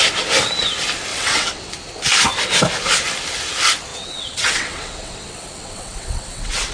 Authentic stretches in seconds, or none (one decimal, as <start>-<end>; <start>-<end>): 0.0-1.1; 1.7-3.9